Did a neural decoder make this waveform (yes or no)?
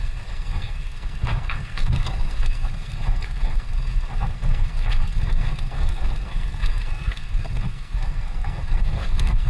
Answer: yes